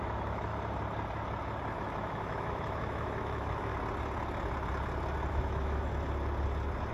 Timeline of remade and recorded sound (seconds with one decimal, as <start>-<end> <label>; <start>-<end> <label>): 0.0-0.5 remade; 0.5-1.7 recorded; 1.7-3.7 remade; 3.7-5.3 recorded; 5.3-5.9 remade; 5.9-6.9 recorded